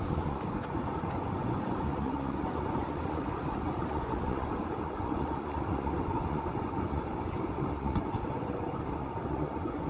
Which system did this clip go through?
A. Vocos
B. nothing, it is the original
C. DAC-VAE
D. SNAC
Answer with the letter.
A